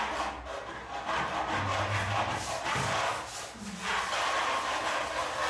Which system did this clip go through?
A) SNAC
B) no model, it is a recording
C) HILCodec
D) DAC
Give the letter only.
B